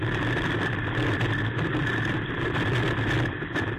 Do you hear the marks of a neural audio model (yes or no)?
no